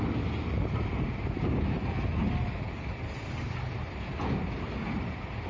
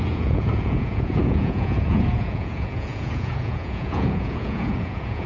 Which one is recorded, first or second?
first